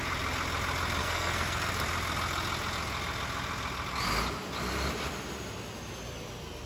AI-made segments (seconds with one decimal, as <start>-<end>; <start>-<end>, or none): 1.0-1.7